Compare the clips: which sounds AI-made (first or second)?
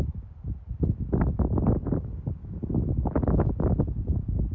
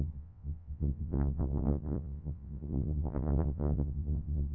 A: second